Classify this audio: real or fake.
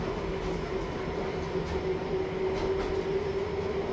real